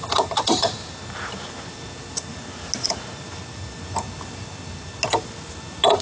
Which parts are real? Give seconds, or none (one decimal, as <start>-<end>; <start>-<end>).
0.0-6.0